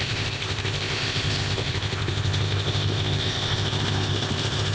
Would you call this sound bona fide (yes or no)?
no